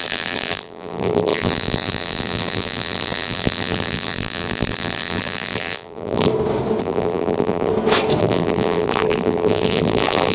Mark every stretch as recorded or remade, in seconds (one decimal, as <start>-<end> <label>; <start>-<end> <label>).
0.0-6.3 remade; 6.3-6.8 recorded; 6.8-7.7 remade; 7.7-8.2 recorded; 8.2-10.3 remade